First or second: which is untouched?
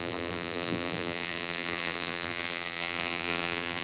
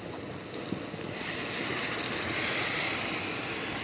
second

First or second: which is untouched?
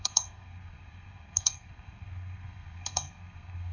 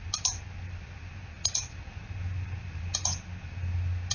second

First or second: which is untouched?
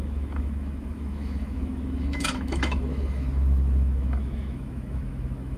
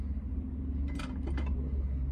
second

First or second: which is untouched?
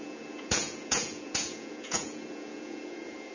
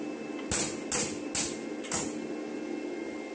second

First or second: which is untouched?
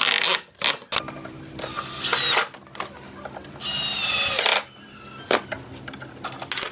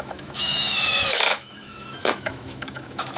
first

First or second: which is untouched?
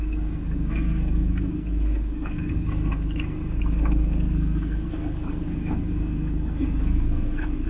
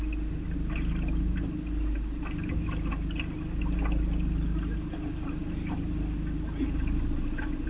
second